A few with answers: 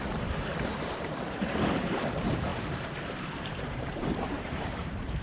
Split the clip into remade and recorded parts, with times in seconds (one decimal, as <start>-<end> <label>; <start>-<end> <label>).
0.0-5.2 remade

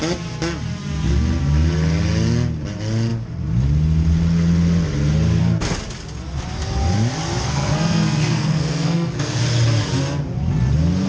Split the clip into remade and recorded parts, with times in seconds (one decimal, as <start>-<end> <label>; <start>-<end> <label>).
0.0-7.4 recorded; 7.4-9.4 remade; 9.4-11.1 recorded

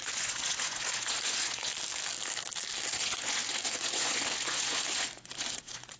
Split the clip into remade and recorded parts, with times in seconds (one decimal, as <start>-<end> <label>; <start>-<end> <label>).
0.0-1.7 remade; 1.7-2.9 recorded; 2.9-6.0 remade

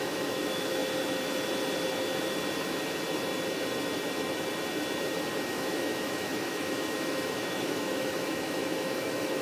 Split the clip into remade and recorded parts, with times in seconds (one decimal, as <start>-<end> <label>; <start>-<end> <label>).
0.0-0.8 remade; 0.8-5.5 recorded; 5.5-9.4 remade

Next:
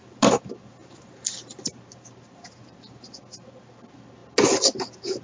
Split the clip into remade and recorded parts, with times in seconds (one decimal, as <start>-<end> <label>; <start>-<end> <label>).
0.0-5.2 recorded